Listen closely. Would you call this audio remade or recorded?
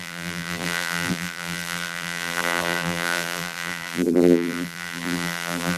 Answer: remade